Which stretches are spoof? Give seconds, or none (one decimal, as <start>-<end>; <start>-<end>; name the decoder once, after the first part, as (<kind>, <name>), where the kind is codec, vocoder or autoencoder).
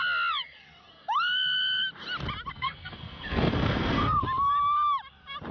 2.5-4.2 (codec, SNAC)